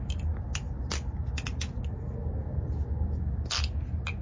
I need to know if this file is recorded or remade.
recorded